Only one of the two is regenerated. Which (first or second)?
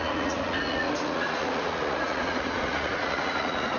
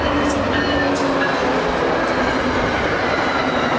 first